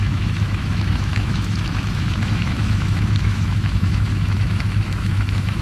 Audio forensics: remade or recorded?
remade